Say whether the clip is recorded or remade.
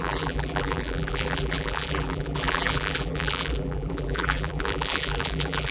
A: remade